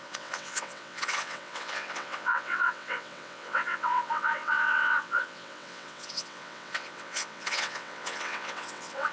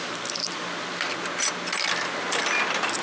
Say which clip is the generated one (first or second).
first